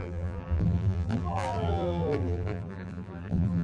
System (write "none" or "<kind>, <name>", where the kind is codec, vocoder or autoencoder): vocoder, BigVGAN v2